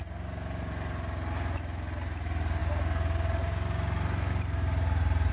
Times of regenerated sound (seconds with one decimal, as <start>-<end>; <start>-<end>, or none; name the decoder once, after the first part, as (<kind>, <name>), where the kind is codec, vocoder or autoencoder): none